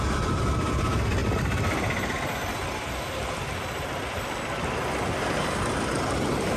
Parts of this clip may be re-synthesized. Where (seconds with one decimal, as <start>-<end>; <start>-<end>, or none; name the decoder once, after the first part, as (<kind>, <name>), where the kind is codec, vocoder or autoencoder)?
none